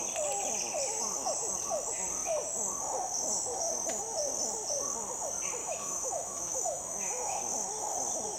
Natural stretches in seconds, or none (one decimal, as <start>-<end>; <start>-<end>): 0.0-5.6; 7.4-8.4